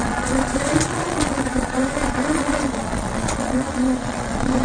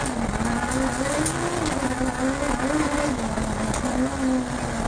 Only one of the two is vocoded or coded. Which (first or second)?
first